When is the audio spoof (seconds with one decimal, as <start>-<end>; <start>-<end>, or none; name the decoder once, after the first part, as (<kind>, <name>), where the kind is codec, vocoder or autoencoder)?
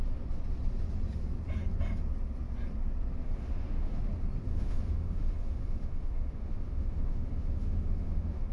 3.2-4.0 (autoencoder, DAC-VAE); 4.5-8.5